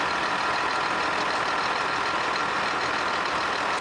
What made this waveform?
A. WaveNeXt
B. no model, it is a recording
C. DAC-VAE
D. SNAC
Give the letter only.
B